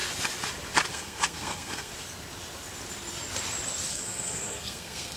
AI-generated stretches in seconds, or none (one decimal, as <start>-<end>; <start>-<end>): 0.9-1.9; 3.9-5.2